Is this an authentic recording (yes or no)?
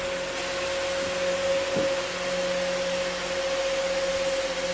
yes